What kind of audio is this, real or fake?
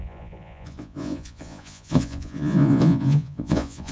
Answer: fake